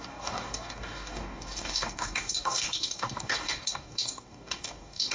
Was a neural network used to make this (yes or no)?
yes